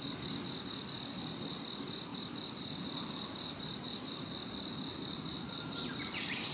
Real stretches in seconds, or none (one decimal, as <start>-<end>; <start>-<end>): 0.0-2.1; 6.0-6.5